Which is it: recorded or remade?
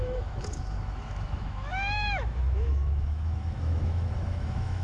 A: remade